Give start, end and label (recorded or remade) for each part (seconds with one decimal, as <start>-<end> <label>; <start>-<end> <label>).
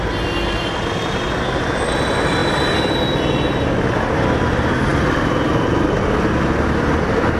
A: 0.0-2.4 recorded; 2.4-3.0 remade; 3.0-4.9 recorded; 4.9-6.2 remade; 6.2-7.4 recorded